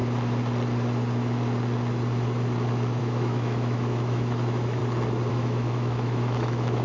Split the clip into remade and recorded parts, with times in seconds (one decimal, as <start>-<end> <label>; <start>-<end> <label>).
0.0-3.0 recorded; 3.0-4.8 remade; 4.8-5.3 recorded; 5.3-6.8 remade